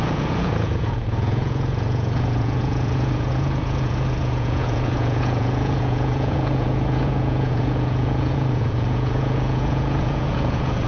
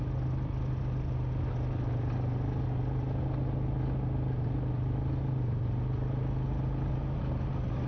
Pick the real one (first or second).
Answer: second